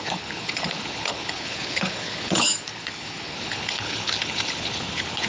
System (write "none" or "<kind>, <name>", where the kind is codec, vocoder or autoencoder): codec, HILCodec